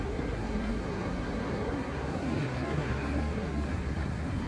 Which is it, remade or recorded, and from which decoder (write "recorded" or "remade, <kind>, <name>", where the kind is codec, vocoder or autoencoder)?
remade, codec, SNAC